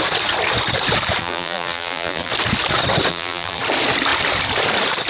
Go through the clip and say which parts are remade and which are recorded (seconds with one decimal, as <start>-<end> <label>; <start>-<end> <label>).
0.0-1.2 recorded; 1.2-2.3 remade; 2.3-3.1 recorded; 3.1-3.6 remade; 3.6-5.1 recorded

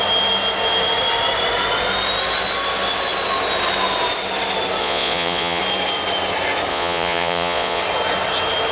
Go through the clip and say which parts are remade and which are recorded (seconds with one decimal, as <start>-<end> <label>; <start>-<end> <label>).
0.0-4.8 recorded; 4.8-5.6 remade; 5.6-6.7 recorded; 6.7-7.8 remade; 7.8-8.7 recorded

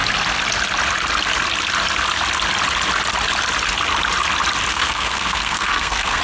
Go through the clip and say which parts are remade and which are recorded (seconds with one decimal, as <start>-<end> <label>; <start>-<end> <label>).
0.0-4.7 recorded; 4.7-6.2 remade

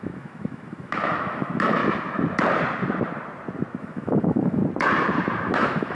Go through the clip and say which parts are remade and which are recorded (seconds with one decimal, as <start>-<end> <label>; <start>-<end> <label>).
0.0-1.8 remade; 1.8-3.8 recorded; 3.8-4.6 remade; 4.6-5.5 recorded; 5.5-5.9 remade